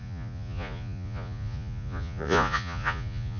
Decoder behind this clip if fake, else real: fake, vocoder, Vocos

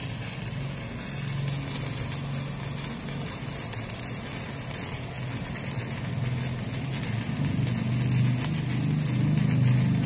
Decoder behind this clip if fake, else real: real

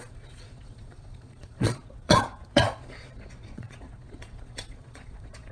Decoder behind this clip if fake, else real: fake, vocoder, Vocos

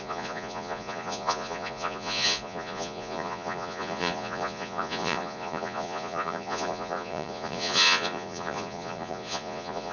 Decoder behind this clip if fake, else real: fake, vocoder, Vocos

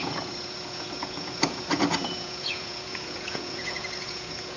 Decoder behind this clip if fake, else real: fake, vocoder, Vocos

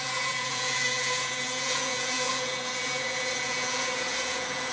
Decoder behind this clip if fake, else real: fake, vocoder, Vocos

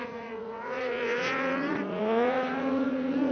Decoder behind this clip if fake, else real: fake, vocoder, Vocos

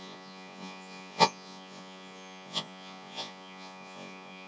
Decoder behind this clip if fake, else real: fake, vocoder, Vocos